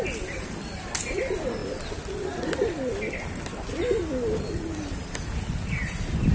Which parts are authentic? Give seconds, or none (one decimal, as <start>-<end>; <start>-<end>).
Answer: 0.0-6.3